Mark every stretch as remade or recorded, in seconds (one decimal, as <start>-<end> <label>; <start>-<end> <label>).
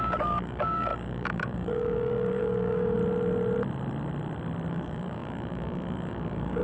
0.0-3.0 remade; 3.0-4.7 recorded; 4.7-6.6 remade